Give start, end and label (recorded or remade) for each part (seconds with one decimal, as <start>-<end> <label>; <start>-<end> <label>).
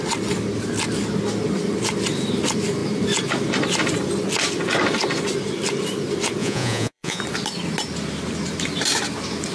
0.0-6.4 recorded; 6.4-7.2 remade; 7.2-9.5 recorded